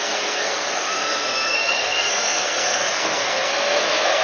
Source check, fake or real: fake